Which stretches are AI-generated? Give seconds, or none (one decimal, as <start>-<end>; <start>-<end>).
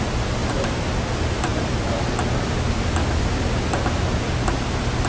none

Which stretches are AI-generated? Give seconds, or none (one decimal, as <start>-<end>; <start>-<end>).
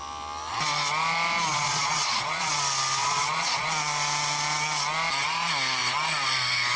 1.5-2.5; 3.0-3.7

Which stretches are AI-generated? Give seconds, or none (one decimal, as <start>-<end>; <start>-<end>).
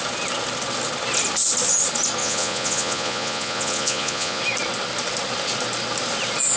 2.2-4.4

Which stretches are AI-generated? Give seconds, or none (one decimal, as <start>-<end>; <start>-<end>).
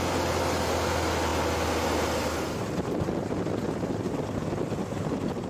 none